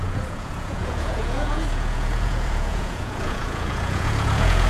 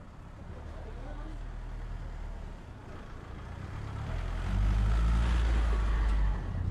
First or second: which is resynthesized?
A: first